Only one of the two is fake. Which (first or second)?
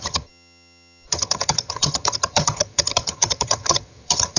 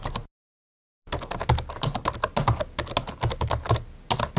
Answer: first